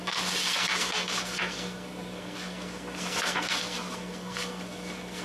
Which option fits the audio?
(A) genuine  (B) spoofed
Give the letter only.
B